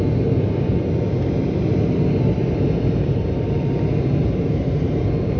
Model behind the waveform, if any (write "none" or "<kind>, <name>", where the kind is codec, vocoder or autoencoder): none